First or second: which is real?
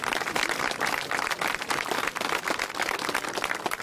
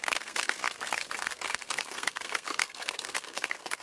first